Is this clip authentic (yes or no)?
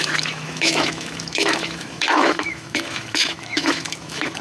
no